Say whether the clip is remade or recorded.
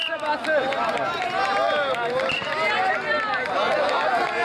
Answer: recorded